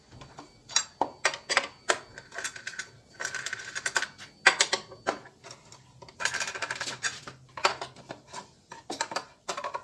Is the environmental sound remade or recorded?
recorded